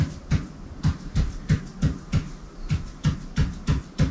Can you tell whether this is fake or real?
real